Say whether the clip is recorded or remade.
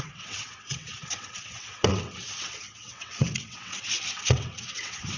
remade